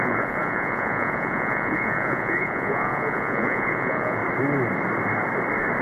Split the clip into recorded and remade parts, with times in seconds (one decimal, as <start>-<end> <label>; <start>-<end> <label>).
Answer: 0.0-4.2 remade; 4.2-5.8 recorded